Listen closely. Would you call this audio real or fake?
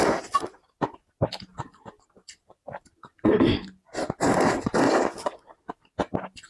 real